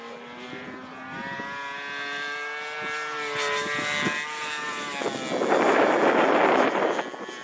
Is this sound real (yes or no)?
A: yes